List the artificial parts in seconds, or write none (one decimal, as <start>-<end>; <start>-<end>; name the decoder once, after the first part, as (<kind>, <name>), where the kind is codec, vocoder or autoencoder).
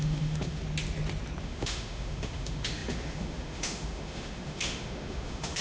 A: 0.0-0.6 (autoencoder, DAC-VAE); 1.4-5.6